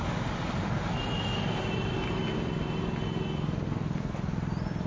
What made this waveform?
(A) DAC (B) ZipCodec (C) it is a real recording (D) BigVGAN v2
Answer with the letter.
C